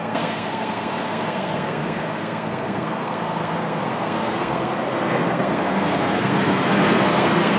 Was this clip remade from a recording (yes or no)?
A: yes